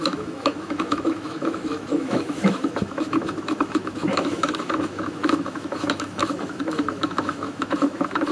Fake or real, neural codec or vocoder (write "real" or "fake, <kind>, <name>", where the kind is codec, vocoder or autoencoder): fake, autoencoder, DAC-VAE